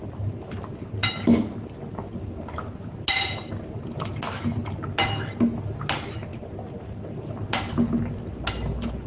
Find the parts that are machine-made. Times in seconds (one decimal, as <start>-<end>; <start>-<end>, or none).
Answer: none